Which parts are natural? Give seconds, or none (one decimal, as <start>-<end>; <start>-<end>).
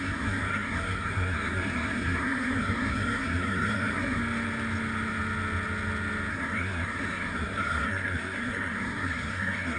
4.2-6.3